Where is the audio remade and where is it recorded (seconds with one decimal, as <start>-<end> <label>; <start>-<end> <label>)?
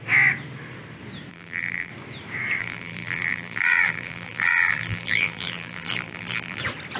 0.0-1.3 recorded; 1.3-1.9 remade; 1.9-2.6 recorded; 2.6-6.6 remade; 6.6-7.0 recorded